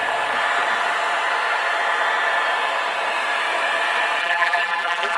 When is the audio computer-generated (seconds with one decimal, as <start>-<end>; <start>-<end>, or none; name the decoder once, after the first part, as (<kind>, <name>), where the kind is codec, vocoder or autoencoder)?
4.2-5.2 (vocoder, BigVGAN v2)